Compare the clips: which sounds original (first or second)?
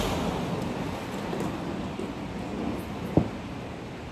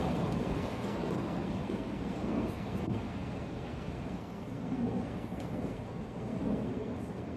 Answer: first